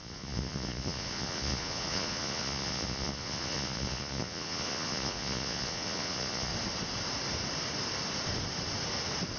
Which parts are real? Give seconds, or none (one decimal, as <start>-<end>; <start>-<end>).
6.5-9.4